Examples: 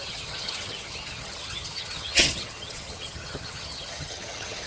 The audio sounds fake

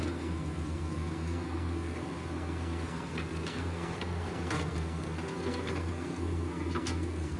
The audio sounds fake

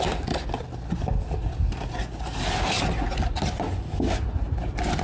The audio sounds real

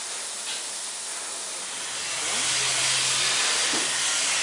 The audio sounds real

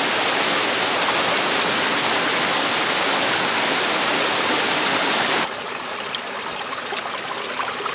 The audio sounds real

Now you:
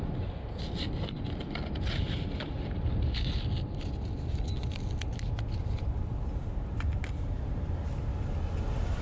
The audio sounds real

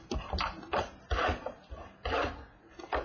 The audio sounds real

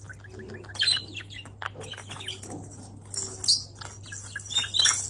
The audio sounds real